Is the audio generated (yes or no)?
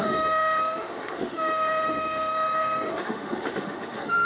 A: yes